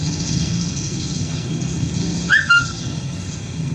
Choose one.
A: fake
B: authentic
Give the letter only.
A